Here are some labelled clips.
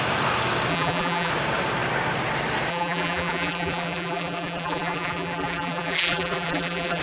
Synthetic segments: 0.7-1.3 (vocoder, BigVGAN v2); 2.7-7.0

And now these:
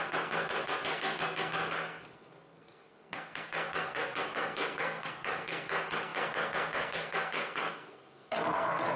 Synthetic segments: 0.0-9.0 (codec, SNAC)

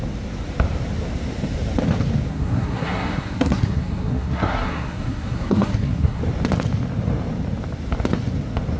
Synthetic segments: 2.3-6.2 (codec, SNAC)

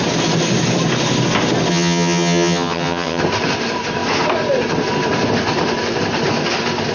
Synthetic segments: 1.7-3.2 (vocoder, HiFi-GAN)

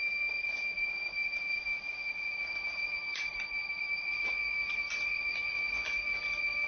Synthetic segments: 4.7-5.5 (vocoder, BigVGAN v2)

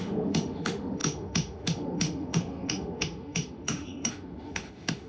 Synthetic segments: 0.0-5.1 (autoencoder, DAC-VAE)

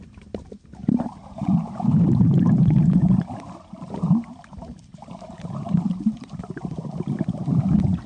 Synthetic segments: 0.8-4.3 (vocoder, BigVGAN v2); 4.9-6.4